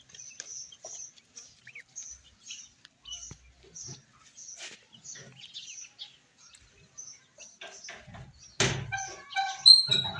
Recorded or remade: recorded